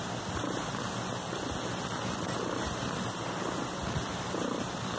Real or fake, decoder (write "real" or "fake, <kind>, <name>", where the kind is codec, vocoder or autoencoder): real